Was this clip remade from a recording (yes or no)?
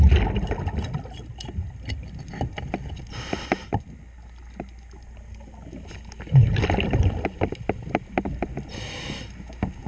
no